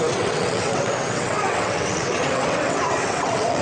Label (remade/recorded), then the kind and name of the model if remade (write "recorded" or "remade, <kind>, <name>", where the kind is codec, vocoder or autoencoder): remade, vocoder, WaveNeXt